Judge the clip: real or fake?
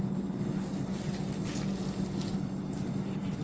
real